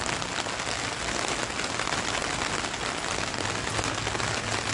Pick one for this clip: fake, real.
real